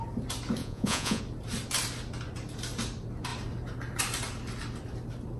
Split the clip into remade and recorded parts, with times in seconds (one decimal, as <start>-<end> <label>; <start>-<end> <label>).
0.0-0.6 recorded; 0.6-1.2 remade; 1.2-5.4 recorded